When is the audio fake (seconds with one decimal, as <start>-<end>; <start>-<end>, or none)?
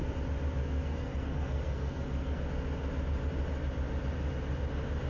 0.6-2.4